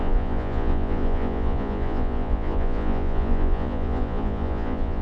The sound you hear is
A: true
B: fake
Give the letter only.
B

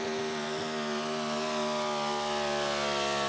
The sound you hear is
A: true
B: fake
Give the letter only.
A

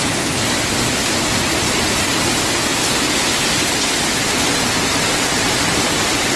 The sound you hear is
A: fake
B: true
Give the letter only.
B